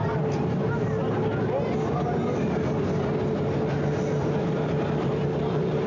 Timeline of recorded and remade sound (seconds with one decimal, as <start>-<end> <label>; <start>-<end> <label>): 0.0-1.3 remade; 1.3-4.2 recorded; 4.2-5.9 remade